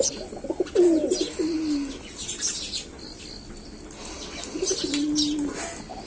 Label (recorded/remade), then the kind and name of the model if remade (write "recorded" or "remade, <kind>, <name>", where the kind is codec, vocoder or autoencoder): recorded